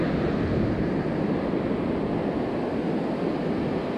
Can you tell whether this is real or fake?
real